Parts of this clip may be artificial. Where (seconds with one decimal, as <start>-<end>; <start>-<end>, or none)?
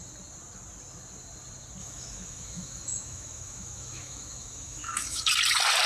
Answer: 1.8-5.3